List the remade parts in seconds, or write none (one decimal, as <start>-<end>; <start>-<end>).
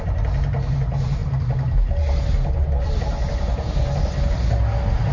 none